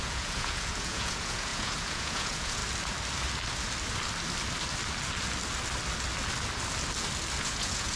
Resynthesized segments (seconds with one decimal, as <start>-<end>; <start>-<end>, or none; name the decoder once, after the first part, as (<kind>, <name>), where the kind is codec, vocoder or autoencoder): 0.0-2.6 (vocoder, Vocos); 7.4-8.0

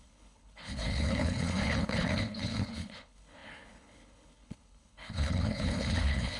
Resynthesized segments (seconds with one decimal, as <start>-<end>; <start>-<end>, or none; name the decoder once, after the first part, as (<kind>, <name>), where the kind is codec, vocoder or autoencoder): 0.0-6.4 (codec, HILCodec)

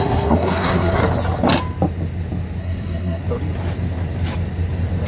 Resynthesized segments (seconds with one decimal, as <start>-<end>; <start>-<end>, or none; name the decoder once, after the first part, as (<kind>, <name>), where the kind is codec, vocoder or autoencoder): 0.0-1.0 (codec, SNAC); 2.6-3.2

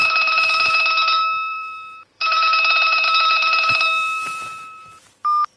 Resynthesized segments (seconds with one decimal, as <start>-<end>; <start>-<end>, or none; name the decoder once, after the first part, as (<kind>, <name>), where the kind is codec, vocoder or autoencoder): 0.0-0.7 (vocoder, BigVGAN v2); 1.5-4.9